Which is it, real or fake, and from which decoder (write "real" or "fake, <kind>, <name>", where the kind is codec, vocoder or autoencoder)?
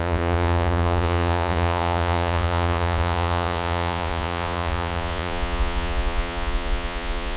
fake, vocoder, Vocos